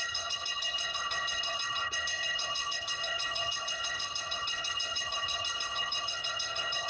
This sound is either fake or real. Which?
fake